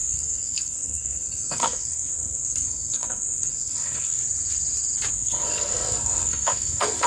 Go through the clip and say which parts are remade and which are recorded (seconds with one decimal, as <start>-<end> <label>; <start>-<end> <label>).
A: 0.0-4.2 remade; 4.2-5.1 recorded; 5.1-7.1 remade